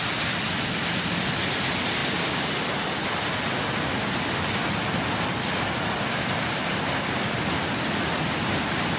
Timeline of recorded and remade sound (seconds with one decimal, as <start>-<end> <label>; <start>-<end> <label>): 0.0-9.0 recorded